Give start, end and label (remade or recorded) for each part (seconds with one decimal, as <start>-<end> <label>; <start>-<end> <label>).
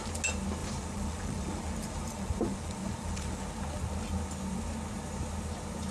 0.0-0.6 recorded; 0.6-3.4 remade; 3.4-5.9 recorded